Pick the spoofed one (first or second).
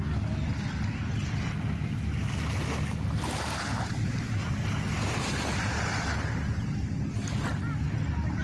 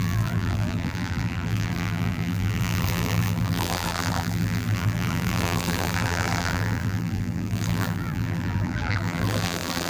second